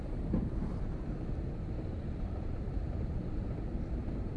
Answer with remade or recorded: remade